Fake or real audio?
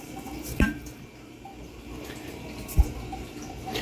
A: fake